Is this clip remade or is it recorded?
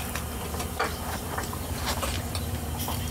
remade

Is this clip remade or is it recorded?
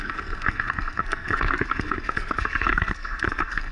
remade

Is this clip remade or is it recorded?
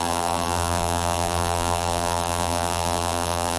remade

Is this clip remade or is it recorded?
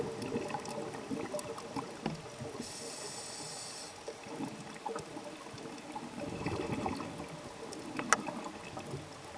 recorded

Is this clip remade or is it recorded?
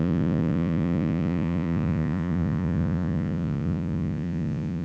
remade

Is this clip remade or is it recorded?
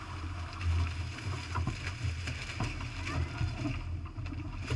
recorded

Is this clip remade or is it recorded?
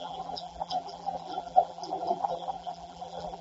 remade